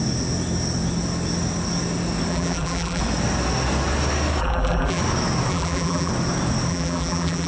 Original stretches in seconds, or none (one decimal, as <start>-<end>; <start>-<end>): 0.0-2.3; 3.0-4.4; 5.0-5.5; 6.1-6.7